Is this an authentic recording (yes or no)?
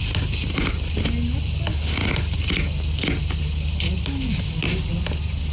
yes